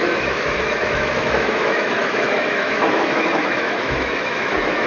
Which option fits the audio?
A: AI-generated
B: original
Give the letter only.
A